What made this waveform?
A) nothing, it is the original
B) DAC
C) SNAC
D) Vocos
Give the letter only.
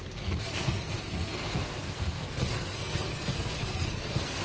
C